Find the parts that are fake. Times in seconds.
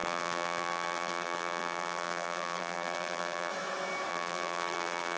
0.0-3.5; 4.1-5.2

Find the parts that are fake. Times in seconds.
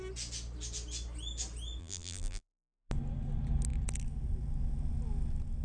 1.8-2.9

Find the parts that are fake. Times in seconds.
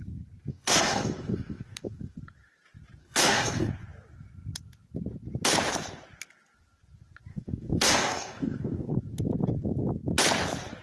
0.5-2.2; 3.0-3.7; 7.3-9.0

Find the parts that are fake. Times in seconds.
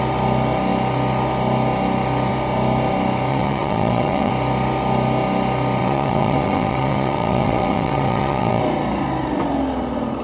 3.3-4.3; 5.8-8.6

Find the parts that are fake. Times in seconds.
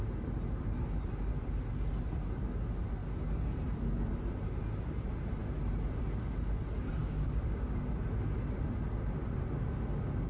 7.0-7.9